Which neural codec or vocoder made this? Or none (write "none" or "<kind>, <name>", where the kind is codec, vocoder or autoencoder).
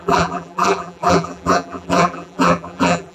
vocoder, BigVGAN v2